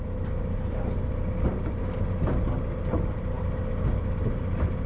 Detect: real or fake real